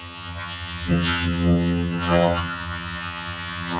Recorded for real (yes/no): no